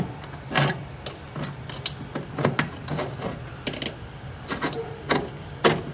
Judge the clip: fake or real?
real